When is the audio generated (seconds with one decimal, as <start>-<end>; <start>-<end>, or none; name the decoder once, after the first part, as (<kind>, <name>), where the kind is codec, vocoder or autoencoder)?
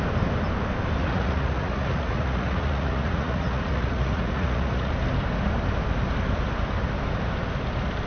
1.0-4.9 (vocoder, Vocos)